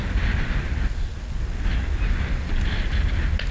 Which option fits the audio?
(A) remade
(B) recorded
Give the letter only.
B